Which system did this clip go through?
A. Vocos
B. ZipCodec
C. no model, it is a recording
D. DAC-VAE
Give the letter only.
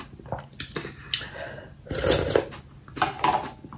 C